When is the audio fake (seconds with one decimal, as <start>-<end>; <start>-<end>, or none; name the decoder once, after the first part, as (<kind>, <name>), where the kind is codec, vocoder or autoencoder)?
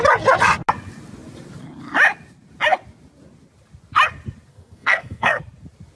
4.5-5.4 (codec, SNAC)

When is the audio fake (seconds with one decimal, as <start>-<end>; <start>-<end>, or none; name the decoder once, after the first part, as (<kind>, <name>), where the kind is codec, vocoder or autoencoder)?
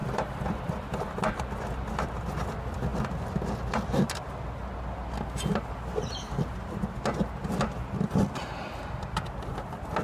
0.0-0.6 (vocoder, BigVGAN v2)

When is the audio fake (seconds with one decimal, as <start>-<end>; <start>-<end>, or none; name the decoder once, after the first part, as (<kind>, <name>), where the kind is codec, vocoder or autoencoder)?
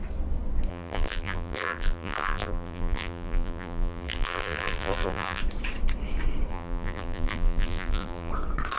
0.7-5.4 (vocoder, BigVGAN v2); 6.5-8.3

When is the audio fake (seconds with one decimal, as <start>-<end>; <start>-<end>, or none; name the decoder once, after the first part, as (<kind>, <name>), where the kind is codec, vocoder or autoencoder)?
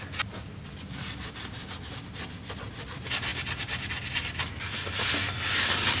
none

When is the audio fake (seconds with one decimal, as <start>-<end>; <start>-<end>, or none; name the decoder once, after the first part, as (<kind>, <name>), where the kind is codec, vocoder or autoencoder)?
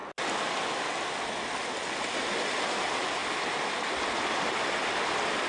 none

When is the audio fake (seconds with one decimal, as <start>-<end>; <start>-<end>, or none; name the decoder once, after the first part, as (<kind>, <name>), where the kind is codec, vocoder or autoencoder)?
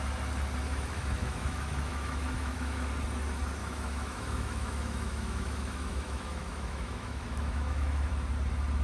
0.7-2.9 (autoencoder, DAC-VAE); 3.6-8.1